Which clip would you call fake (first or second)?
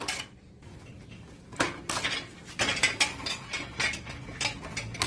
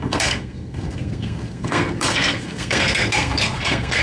second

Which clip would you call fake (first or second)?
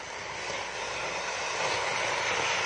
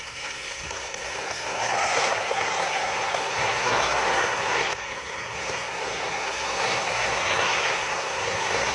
second